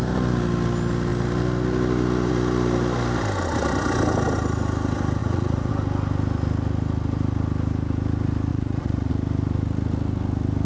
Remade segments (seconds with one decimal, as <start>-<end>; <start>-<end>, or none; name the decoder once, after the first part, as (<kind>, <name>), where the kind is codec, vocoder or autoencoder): 5.2-5.7 (vocoder, Vocos); 8.5-9.1